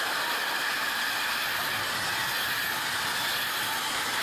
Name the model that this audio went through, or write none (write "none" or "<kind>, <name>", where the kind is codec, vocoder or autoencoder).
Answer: none